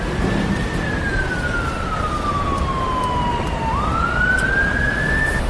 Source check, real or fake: real